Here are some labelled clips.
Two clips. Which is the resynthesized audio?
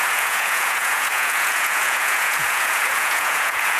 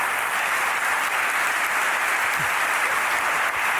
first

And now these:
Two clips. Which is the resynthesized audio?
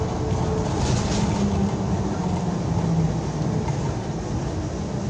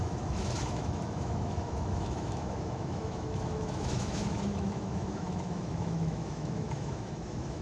second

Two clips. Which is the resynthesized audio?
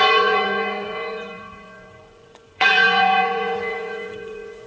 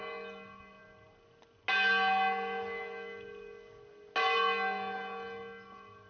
first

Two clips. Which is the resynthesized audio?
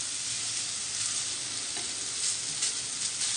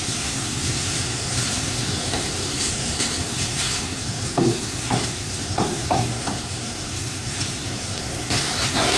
second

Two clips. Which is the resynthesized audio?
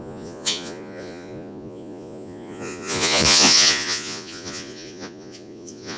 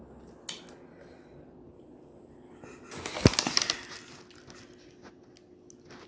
first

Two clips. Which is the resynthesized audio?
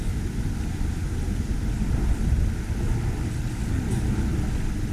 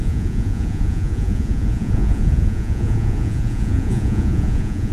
second